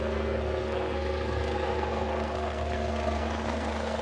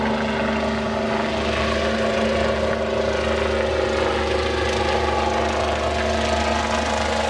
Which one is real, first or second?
second